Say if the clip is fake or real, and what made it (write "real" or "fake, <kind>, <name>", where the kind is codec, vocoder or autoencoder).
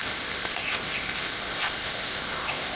fake, codec, ZipCodec